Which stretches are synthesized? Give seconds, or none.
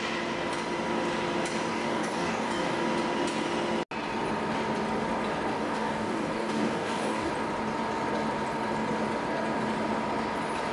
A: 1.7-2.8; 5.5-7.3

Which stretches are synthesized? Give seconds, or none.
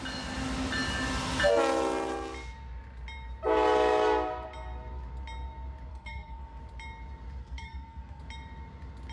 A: 5.9-6.6; 7.4-8.2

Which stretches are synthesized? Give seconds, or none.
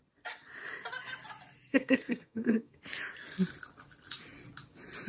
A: 1.7-2.8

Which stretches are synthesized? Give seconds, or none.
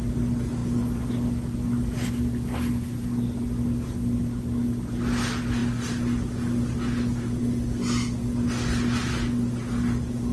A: none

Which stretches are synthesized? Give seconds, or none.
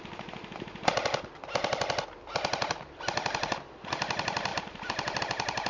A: none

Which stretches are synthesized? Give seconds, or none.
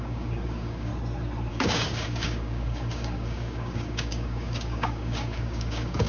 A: 0.0-0.9; 1.5-6.1